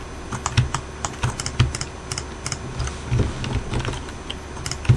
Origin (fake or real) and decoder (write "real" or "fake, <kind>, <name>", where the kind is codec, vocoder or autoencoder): real